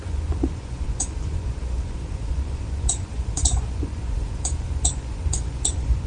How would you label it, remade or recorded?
remade